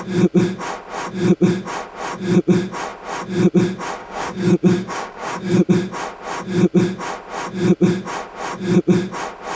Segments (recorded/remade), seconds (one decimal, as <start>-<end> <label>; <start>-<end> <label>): 0.0-4.0 recorded; 4.0-5.7 remade; 5.7-9.6 recorded